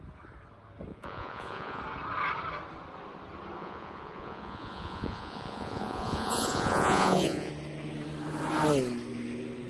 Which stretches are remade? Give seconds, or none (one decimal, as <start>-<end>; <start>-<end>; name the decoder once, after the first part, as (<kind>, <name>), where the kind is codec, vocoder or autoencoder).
0.9-1.8 (vocoder, Vocos); 3.6-7.5